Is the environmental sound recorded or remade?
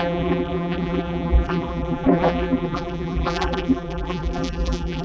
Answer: remade